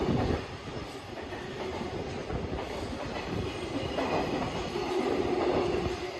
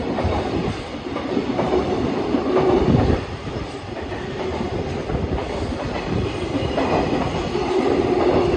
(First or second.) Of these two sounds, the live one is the first